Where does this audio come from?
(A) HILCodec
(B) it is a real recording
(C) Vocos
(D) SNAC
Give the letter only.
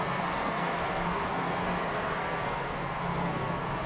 D